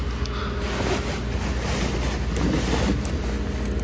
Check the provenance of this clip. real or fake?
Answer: real